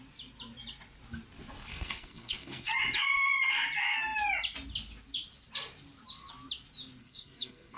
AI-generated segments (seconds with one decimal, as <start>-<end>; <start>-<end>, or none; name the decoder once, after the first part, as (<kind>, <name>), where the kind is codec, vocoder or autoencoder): 1.7-2.7 (codec, SNAC); 7.0-7.8